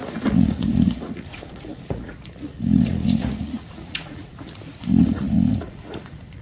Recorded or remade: remade